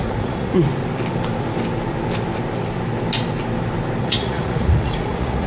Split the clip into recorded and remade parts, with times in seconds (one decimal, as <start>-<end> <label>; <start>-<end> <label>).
0.0-0.7 remade; 0.7-4.0 recorded; 4.0-5.5 remade